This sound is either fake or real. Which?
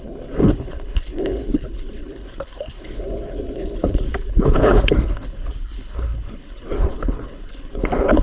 fake